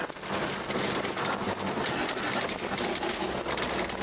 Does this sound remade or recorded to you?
recorded